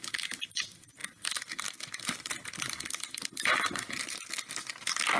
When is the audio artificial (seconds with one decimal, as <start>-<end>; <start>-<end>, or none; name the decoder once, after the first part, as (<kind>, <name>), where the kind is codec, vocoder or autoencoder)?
none